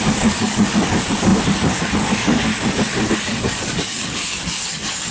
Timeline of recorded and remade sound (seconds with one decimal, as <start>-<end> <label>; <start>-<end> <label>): 0.0-2.5 remade; 2.5-3.1 recorded; 3.1-5.1 remade